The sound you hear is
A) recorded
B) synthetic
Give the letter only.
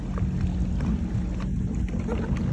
A